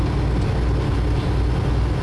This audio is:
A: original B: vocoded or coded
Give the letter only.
A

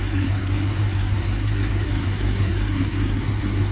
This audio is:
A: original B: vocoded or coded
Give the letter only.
B